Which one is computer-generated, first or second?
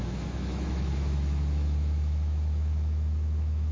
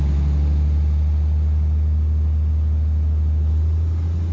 first